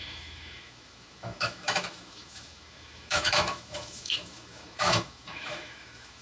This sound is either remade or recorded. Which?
remade